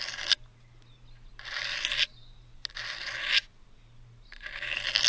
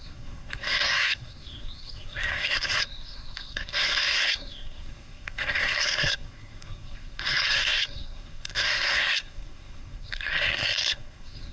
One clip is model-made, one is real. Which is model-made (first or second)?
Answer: second